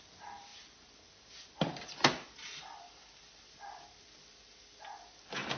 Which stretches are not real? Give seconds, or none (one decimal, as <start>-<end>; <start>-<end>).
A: none